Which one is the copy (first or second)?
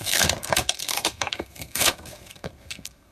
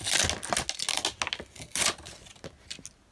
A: first